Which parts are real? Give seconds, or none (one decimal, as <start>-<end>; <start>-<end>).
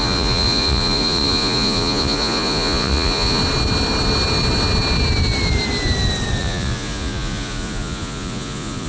3.4-6.4